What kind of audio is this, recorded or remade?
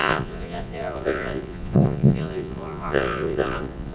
remade